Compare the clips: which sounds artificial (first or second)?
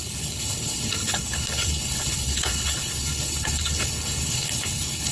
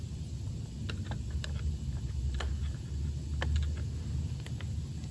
first